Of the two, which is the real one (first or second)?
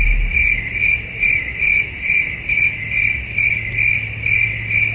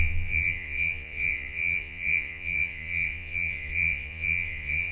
first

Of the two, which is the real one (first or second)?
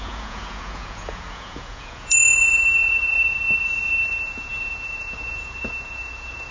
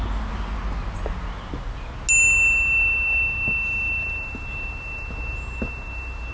second